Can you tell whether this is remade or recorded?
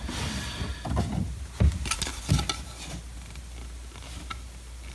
recorded